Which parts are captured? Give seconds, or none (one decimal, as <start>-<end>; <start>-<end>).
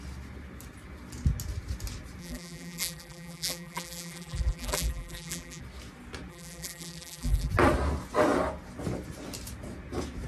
0.0-2.2; 5.6-6.3; 7.5-10.3